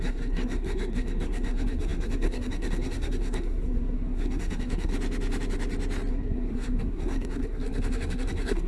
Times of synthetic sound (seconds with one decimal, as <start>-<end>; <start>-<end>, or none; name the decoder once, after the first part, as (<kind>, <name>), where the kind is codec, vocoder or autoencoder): 0.0-4.9 (codec, SNAC); 6.1-8.7